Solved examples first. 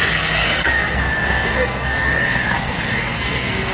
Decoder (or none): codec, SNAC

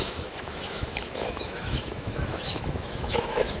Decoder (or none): autoencoder, DAC-VAE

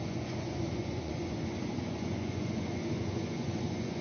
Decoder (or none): vocoder, Vocos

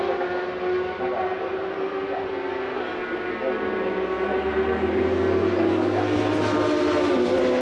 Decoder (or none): none